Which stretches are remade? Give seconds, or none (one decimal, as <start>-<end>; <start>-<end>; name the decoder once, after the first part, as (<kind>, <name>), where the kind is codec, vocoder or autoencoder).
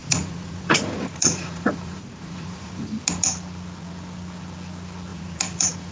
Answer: 0.0-2.8 (vocoder, Vocos); 5.1-5.9